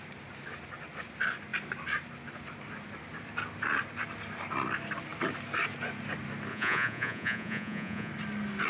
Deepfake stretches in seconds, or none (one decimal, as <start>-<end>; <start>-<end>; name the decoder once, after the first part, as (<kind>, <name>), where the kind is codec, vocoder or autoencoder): 6.5-8.1 (vocoder, Vocos)